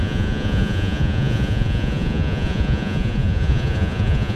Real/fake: fake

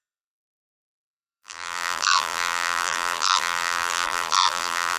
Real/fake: fake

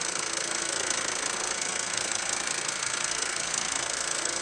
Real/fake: fake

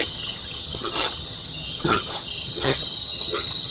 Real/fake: fake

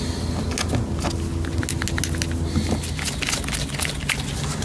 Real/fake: real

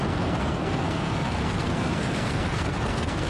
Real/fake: fake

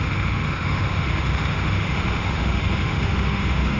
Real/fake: fake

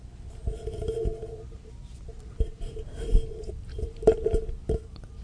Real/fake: real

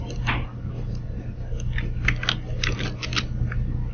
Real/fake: real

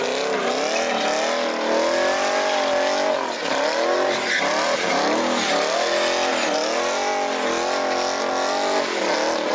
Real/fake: real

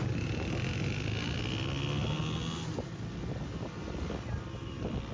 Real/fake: real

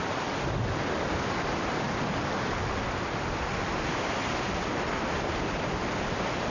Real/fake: real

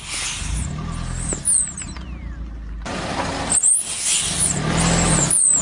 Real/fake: real